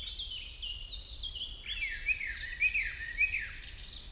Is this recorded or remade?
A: recorded